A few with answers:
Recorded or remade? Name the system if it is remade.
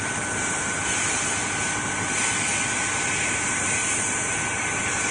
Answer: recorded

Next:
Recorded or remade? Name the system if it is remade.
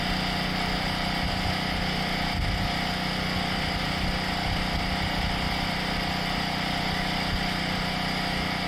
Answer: recorded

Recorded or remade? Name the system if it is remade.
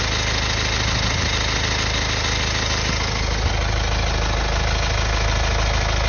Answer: recorded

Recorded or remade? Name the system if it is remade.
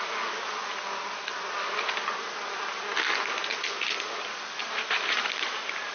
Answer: recorded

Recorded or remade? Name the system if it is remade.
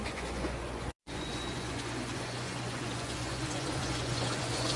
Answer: remade, vocoder, Vocos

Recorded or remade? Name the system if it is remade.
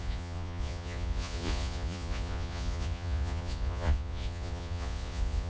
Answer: remade, vocoder, Vocos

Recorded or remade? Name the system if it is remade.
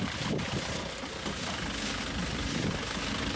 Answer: recorded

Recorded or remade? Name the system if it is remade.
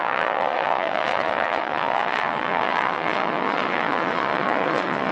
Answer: remade, vocoder, Vocos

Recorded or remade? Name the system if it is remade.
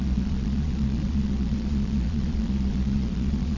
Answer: remade, vocoder, Vocos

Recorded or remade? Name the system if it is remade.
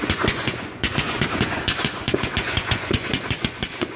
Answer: remade, vocoder, Vocos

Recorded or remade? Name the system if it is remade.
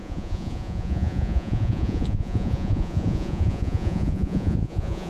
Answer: remade, vocoder, Vocos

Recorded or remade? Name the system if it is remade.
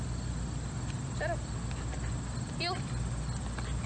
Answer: recorded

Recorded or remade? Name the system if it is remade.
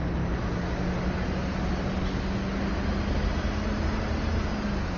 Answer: recorded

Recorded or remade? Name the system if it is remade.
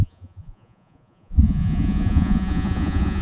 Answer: remade, vocoder, Vocos